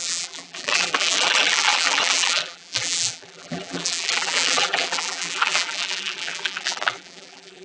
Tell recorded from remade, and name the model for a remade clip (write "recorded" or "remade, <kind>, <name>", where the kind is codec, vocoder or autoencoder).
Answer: remade, vocoder, BigVGAN v2